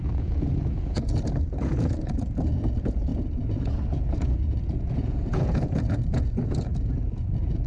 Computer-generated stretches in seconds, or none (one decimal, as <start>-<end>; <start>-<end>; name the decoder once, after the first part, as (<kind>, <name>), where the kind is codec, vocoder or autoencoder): 0.0-7.7 (vocoder, Vocos)